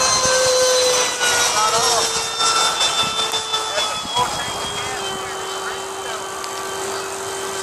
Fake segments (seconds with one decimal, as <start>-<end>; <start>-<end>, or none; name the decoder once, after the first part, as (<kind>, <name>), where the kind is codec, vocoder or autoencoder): 6.0-7.6 (vocoder, BigVGAN v2)